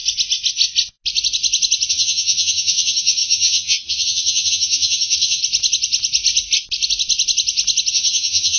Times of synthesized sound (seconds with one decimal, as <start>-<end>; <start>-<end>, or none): 1.9-5.4; 7.9-8.6